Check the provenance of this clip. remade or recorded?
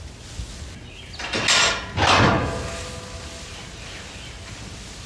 recorded